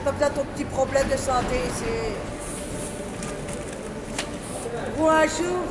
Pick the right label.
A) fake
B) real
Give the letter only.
B